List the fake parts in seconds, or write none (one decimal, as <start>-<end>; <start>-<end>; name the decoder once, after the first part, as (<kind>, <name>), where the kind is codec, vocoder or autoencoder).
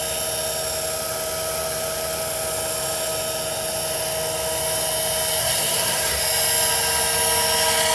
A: 5.4-6.2 (codec, SNAC)